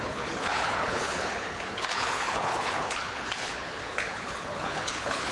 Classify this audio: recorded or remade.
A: remade